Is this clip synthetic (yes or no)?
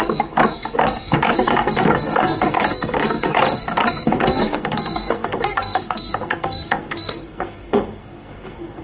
yes